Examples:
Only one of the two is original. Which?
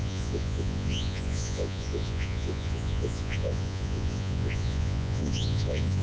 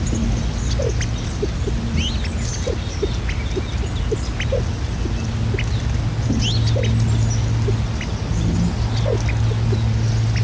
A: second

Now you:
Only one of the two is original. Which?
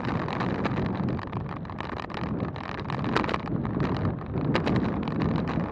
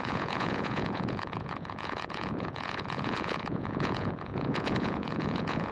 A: first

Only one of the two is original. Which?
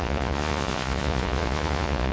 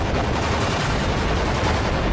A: second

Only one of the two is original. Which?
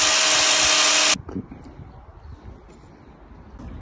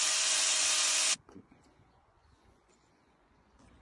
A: first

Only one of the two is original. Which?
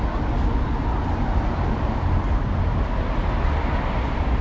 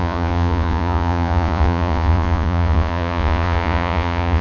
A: first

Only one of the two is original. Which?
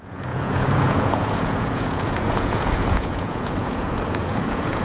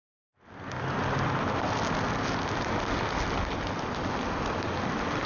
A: second